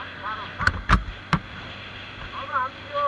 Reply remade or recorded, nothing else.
recorded